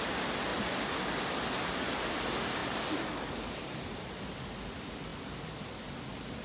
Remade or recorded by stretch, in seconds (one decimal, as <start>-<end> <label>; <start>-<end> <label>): 0.0-6.4 recorded